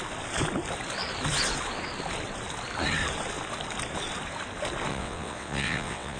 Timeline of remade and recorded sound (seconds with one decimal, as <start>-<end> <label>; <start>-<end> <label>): 0.0-4.9 recorded; 4.9-6.2 remade